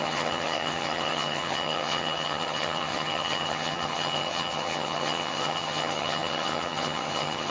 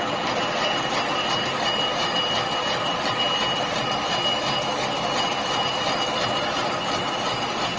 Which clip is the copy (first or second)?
first